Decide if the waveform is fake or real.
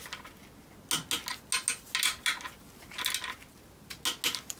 real